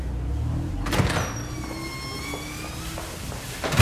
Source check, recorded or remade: recorded